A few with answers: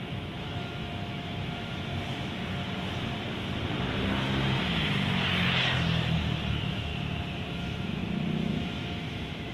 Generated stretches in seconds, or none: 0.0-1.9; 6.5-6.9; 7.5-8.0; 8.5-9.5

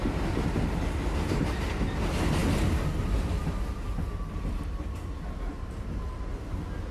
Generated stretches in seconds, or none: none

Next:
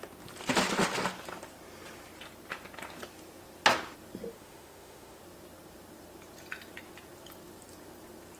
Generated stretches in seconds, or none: 4.3-5.2

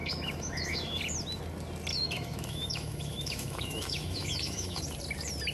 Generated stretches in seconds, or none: 0.0-1.0; 1.9-4.8

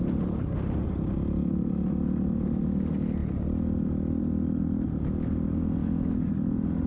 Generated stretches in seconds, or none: 5.8-6.3

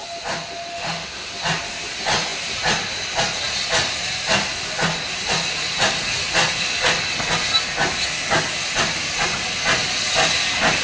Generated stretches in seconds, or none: 0.7-1.3

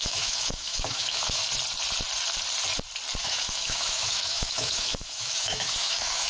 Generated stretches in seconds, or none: 0.0-1.4; 3.2-6.3

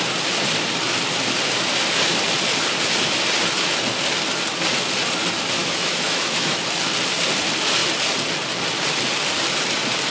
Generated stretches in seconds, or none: 5.6-6.6